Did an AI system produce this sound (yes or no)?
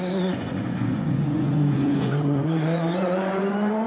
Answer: yes